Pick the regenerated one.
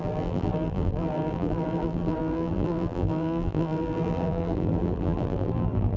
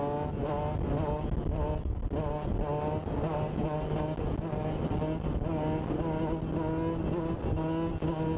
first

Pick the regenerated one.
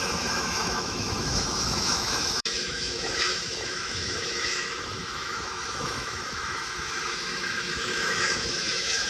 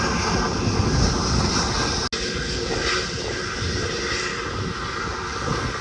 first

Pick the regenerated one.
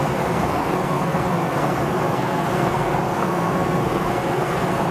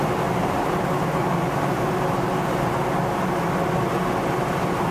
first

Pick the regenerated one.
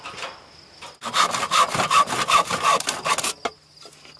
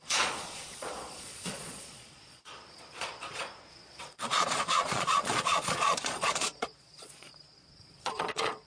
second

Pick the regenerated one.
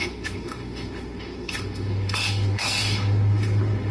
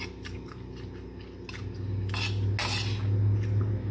first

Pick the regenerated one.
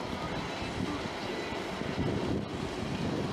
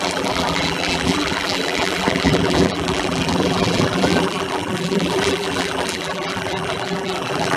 second